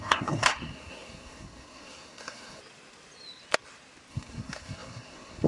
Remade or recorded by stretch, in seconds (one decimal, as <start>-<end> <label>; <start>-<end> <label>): 0.0-2.6 remade; 2.6-4.1 recorded; 4.1-5.5 remade